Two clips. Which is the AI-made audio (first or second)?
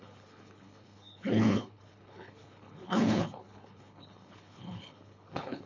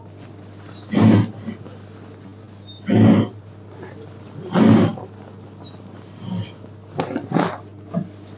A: first